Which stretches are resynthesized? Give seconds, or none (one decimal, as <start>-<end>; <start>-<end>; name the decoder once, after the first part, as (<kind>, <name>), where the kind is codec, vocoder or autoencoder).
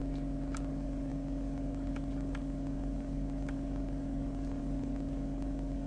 0.7-5.9 (codec, DAC)